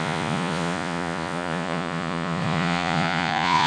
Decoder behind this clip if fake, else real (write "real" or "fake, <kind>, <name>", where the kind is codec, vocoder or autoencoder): fake, vocoder, Vocos